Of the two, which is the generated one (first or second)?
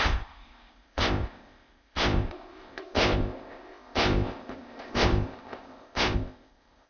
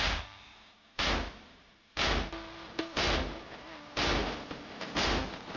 first